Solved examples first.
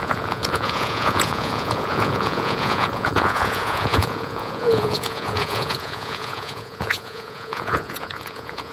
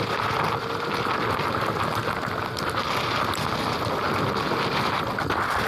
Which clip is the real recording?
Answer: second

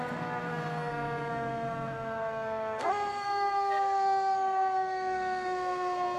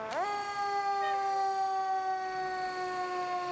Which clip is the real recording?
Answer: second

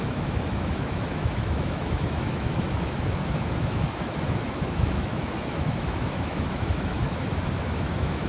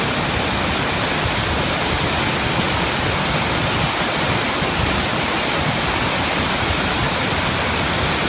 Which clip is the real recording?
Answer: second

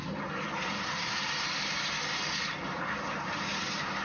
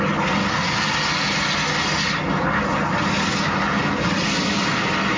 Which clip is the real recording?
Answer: second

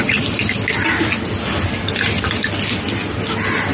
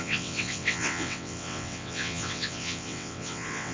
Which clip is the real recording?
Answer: first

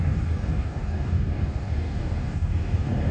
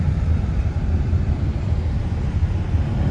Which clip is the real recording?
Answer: second